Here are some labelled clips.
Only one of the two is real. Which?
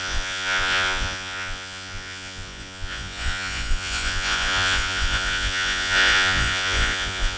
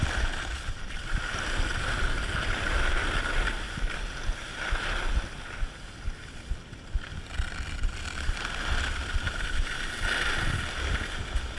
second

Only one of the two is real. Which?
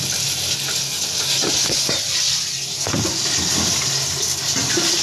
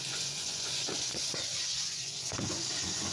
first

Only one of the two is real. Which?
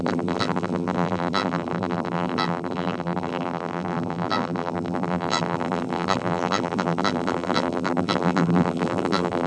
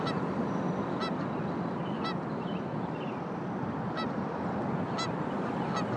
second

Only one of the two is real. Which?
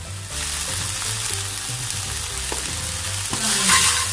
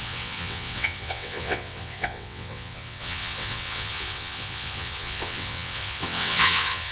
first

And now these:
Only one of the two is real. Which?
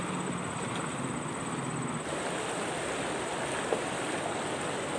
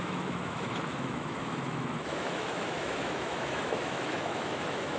first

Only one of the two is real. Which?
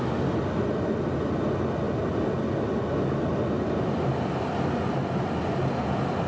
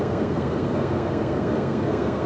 first